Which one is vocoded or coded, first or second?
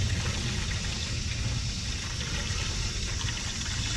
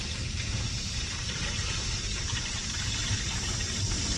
second